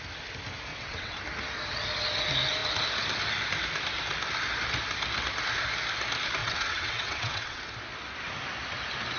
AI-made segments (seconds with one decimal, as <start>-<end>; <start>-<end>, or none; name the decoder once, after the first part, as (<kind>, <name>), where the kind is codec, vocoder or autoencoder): 0.7-1.2 (vocoder, WaveNeXt); 6.4-7.6